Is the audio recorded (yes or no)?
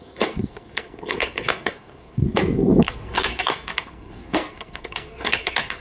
no